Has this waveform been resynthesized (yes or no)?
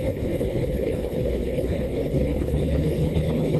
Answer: yes